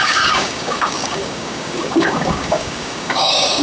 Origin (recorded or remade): remade